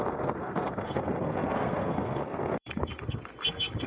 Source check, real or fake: fake